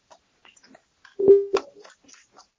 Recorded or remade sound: recorded